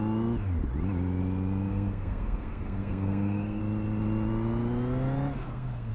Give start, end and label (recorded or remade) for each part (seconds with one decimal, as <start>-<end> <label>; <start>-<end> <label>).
0.0-1.7 recorded; 1.7-3.6 remade; 3.6-5.4 recorded; 5.4-5.9 remade